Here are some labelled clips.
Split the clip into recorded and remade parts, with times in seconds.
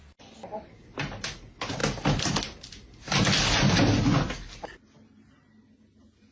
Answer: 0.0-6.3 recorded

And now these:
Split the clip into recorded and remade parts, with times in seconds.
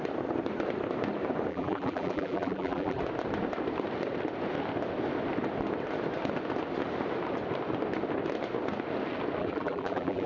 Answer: 0.0-1.5 recorded; 1.5-3.0 remade; 3.0-9.4 recorded; 9.4-10.3 remade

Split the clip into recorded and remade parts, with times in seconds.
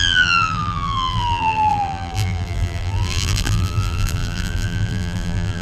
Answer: 0.0-5.6 remade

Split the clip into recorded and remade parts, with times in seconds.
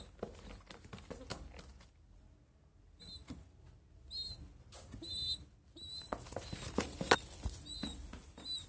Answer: 0.0-8.7 recorded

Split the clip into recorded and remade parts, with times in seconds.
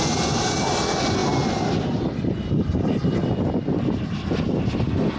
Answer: 0.0-5.2 recorded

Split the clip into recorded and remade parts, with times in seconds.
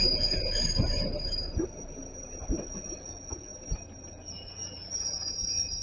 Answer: 0.0-0.5 remade; 0.5-3.0 recorded; 3.0-3.5 remade; 3.5-4.1 recorded; 4.1-5.8 remade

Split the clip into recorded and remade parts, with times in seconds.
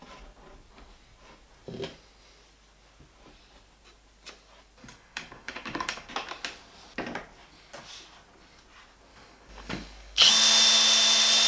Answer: 0.0-4.8 recorded; 4.8-6.1 remade; 6.1-9.1 recorded; 9.1-10.3 remade; 10.3-11.5 recorded